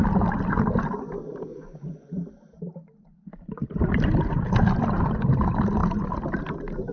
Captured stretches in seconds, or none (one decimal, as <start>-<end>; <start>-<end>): 0.0-1.5; 2.2-6.9